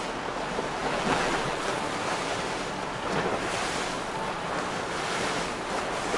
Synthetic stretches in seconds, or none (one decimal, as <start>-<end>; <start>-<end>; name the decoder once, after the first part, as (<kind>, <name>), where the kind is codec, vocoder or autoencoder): 0.8-1.7 (vocoder, BigVGAN v2)